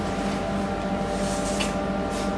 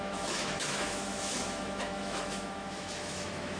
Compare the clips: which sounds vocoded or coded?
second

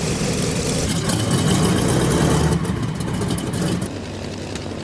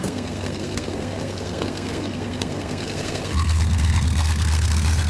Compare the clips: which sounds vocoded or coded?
second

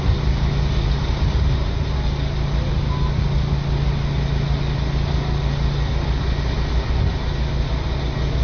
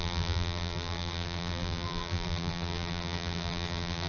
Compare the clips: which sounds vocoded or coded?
second